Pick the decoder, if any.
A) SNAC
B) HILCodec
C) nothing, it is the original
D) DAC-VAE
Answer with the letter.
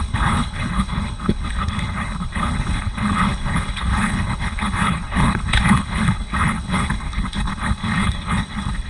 B